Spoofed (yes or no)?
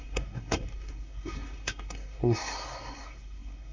yes